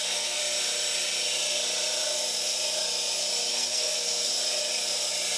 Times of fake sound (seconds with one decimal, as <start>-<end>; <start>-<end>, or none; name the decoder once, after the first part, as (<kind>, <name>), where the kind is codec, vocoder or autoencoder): 0.0-0.4 (codec, SNAC); 3.5-4.3